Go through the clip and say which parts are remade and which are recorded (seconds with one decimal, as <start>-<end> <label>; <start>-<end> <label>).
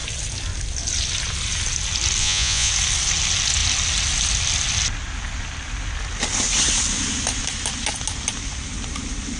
0.0-2.2 recorded; 2.2-2.7 remade; 2.7-9.4 recorded